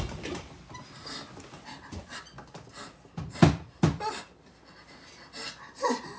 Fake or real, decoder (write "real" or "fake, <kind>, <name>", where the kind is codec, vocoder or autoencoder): real